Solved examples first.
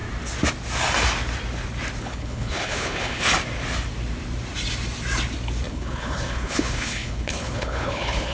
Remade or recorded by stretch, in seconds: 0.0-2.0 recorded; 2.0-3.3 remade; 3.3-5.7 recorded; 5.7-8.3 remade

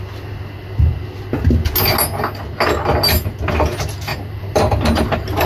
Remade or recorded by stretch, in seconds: 0.0-4.1 recorded; 4.1-5.5 remade

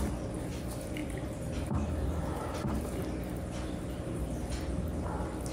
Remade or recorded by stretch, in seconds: 0.0-5.5 recorded

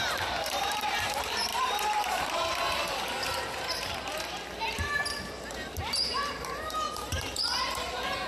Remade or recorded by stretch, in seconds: 0.0-8.3 remade

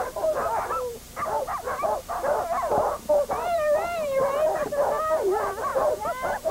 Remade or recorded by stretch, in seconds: 0.0-0.4 remade; 0.4-3.3 recorded; 3.3-4.2 remade; 4.2-5.0 recorded; 5.0-6.5 remade

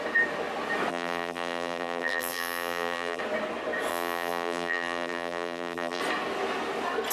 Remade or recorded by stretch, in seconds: 0.0-0.9 recorded; 0.9-3.2 remade; 3.2-3.9 recorded; 3.9-6.0 remade; 6.0-7.1 recorded